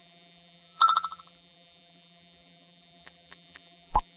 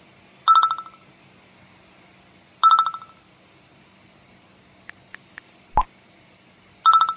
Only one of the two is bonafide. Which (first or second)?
second